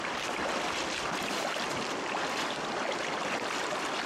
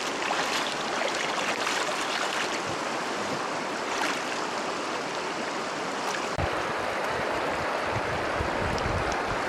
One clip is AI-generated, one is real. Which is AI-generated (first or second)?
second